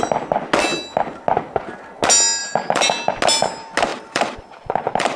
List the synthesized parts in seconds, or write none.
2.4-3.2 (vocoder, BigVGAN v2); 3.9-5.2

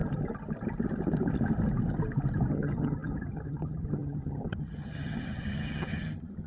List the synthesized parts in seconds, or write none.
2.5-6.5 (vocoder, HiFi-GAN)

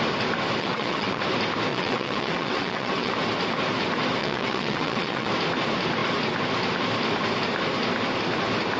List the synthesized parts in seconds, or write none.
0.6-1.2 (vocoder, WaveNeXt); 1.7-3.1; 4.2-5.3

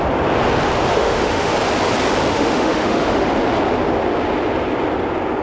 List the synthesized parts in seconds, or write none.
0.9-1.5 (autoencoder, DAC-VAE); 2.3-3.3

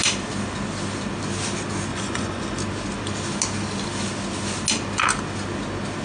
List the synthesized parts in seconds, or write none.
1.9-2.6 (vocoder, Vocos)